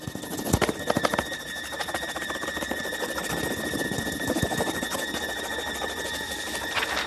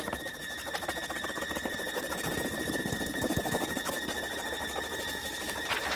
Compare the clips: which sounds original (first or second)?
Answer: first